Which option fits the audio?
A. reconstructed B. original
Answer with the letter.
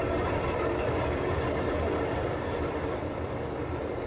A